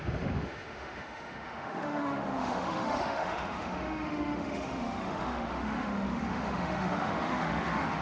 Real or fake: fake